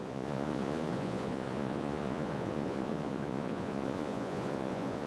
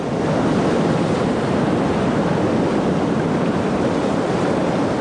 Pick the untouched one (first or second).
second